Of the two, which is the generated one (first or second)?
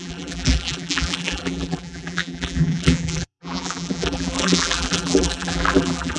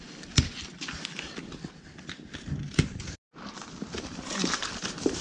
first